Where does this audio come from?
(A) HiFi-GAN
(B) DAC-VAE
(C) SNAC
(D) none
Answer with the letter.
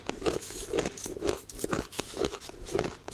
B